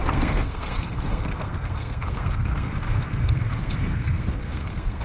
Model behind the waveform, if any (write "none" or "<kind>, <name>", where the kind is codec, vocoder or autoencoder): codec, SNAC